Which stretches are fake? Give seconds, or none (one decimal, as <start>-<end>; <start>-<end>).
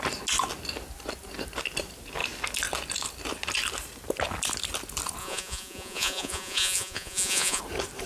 5.2-7.6